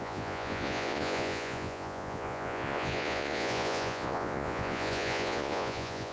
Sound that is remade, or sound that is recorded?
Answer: remade